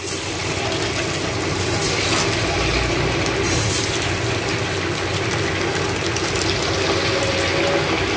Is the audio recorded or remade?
recorded